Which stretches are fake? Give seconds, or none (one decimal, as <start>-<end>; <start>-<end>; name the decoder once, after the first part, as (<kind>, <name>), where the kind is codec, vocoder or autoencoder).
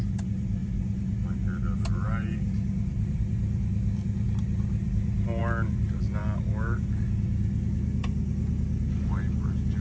none